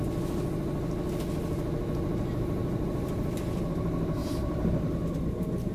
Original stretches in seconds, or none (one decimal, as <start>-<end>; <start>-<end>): 0.0-2.6; 3.7-4.2; 4.7-5.7